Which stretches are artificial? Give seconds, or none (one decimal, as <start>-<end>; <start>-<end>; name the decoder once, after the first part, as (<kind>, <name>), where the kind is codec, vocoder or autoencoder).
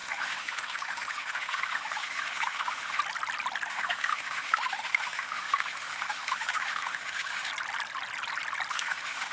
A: 0.0-3.0 (autoencoder, DAC-VAE); 3.7-7.5; 8.7-9.3